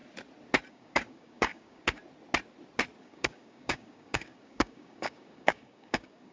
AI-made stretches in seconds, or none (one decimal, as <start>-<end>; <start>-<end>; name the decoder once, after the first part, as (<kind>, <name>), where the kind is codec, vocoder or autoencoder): 0.7-2.0 (codec, DAC); 3.0-6.3